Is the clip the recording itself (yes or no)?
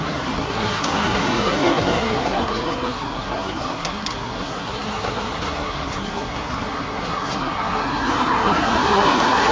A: no